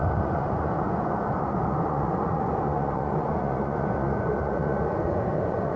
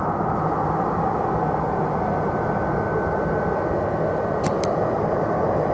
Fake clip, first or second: first